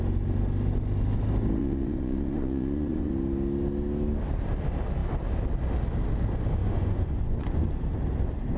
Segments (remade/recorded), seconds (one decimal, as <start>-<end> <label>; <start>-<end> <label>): 0.0-1.6 recorded; 1.6-3.1 remade; 3.1-6.6 recorded; 6.6-7.6 remade; 7.6-8.6 recorded